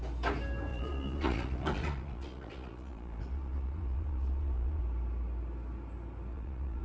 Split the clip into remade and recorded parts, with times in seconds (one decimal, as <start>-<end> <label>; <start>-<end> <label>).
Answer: 0.0-0.7 recorded; 0.7-4.8 remade; 4.8-6.3 recorded; 6.3-6.8 remade